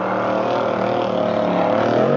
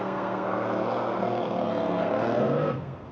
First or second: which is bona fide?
first